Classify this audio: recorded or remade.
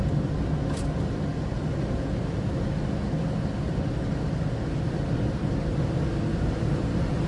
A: recorded